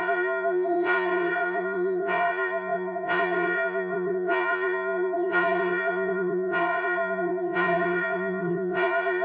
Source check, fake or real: fake